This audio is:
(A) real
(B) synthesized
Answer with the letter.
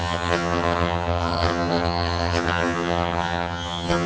B